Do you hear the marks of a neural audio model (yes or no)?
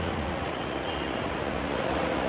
yes